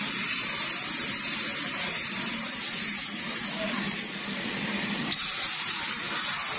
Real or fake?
fake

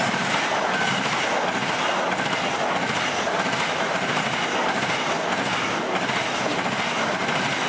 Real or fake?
real